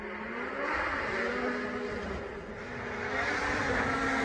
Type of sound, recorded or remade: recorded